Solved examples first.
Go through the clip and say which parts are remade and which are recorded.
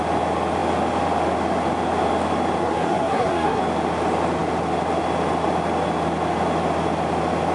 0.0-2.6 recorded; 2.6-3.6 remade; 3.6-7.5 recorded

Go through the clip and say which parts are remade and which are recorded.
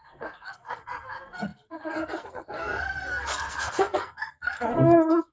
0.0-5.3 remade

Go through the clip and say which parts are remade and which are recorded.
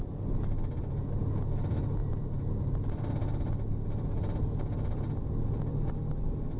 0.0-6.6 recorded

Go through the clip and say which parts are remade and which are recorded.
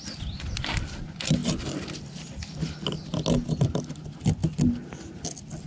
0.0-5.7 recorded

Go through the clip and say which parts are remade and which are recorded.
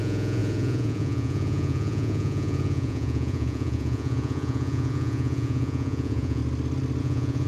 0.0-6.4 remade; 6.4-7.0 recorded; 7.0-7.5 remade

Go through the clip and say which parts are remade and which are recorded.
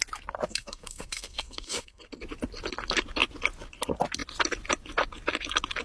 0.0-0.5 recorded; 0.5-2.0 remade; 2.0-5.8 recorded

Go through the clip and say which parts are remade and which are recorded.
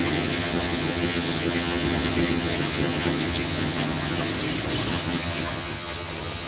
0.0-4.3 remade; 4.3-4.9 recorded; 4.9-6.5 remade